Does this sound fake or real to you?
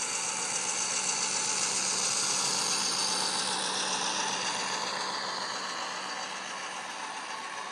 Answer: real